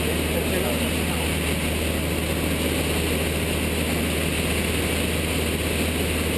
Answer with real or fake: real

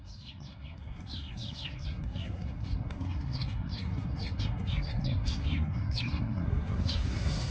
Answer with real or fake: fake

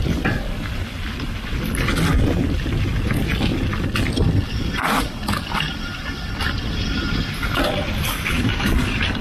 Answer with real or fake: real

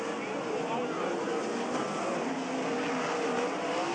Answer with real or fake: real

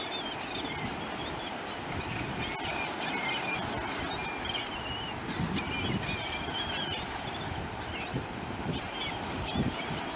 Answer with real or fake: real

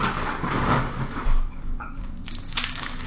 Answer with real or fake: fake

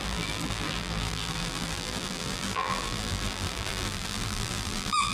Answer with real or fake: fake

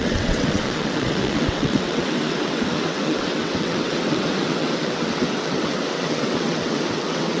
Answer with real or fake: fake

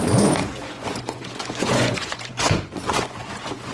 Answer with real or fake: fake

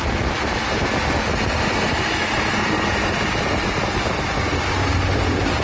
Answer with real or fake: real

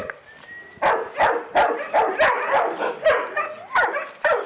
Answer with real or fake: real